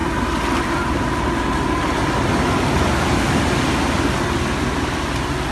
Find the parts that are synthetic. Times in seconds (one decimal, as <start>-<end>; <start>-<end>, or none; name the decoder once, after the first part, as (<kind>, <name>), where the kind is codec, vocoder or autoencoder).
none